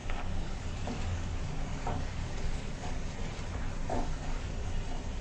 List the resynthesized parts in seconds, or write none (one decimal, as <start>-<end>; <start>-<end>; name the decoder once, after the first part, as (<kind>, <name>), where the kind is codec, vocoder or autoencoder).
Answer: 0.0-3.1 (codec, DAC); 3.9-4.7